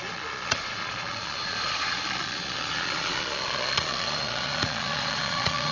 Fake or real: fake